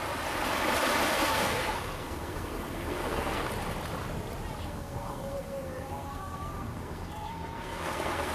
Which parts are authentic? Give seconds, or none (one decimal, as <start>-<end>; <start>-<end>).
0.0-1.1; 3.5-4.6